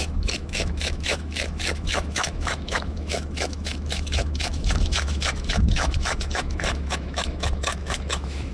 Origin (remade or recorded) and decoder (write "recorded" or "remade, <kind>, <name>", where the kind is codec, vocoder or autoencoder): remade, autoencoder, DAC-VAE